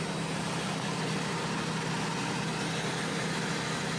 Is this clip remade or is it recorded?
recorded